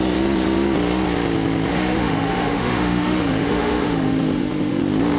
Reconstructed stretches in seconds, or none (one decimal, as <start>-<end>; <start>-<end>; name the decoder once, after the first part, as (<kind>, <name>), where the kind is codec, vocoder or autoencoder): 1.7-4.8 (autoencoder, DAC-VAE)